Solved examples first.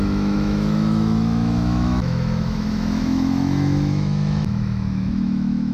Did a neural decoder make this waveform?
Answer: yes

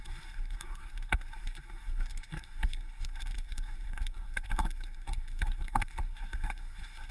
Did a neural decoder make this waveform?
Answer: yes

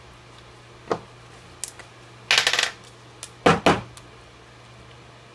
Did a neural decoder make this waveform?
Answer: no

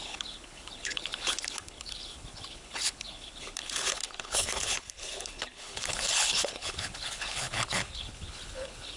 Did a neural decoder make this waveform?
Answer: yes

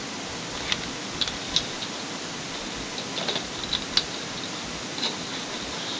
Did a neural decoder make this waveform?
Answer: no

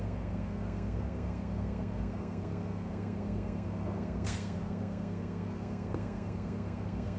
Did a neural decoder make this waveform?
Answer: yes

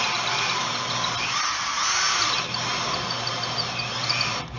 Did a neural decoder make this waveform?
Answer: no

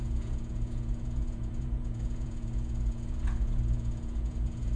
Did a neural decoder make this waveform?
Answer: yes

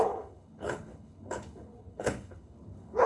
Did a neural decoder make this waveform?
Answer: yes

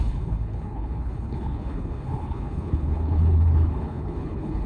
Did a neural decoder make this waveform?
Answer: yes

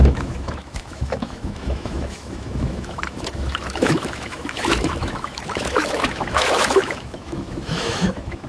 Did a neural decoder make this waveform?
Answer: yes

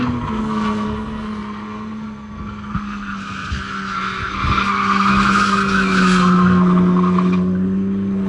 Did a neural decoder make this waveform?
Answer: yes